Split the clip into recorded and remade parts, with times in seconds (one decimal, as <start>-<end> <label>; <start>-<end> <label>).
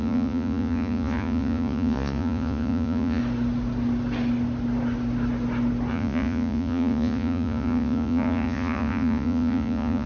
0.0-3.2 remade; 3.2-5.9 recorded; 5.9-10.1 remade